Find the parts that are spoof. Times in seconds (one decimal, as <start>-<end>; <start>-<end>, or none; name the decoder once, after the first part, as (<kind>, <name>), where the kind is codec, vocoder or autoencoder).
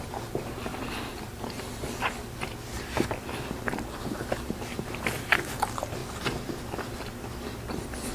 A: none